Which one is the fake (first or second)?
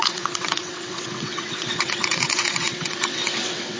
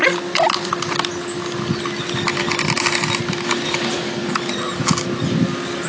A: first